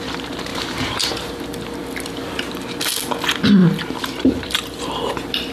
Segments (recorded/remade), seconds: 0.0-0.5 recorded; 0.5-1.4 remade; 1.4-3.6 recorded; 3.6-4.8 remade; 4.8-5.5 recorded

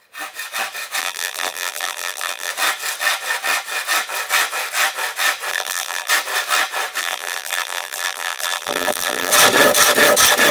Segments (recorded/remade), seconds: 0.0-1.0 recorded; 1.0-2.5 remade; 2.5-5.5 recorded; 5.5-6.1 remade; 6.1-7.0 recorded; 7.0-9.3 remade; 9.3-10.5 recorded